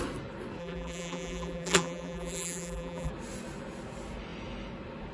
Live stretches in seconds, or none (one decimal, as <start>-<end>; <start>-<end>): 0.0-0.6; 3.1-5.1